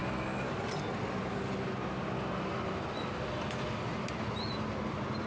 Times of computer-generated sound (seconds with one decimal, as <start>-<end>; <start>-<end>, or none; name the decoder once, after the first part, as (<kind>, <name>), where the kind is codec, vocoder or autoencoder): none